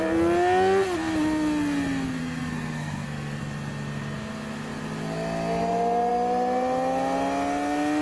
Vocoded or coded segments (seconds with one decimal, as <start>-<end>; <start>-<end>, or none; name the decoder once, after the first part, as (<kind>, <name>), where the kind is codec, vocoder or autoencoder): 2.2-3.4 (codec, SNAC)